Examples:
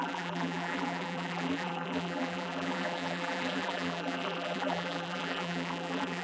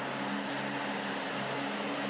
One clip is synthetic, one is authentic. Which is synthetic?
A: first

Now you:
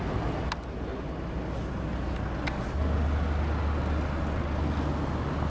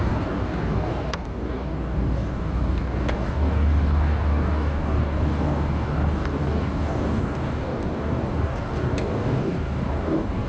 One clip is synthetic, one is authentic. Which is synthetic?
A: second